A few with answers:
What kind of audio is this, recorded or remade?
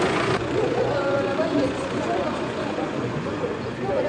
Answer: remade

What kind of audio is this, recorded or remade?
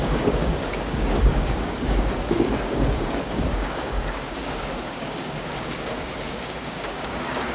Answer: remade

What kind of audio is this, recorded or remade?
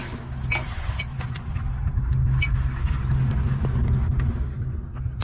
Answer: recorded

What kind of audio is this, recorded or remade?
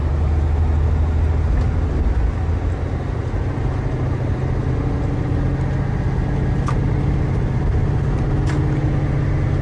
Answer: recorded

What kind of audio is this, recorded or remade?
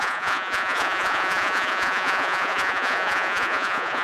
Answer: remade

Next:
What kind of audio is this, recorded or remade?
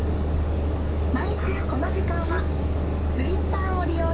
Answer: remade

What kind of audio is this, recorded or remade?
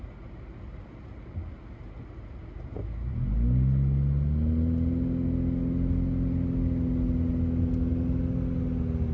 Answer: recorded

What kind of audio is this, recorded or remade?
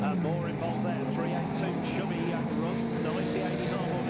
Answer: recorded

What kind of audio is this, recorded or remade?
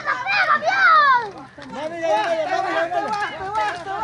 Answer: recorded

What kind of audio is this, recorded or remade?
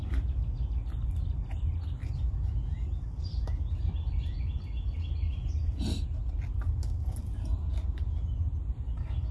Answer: recorded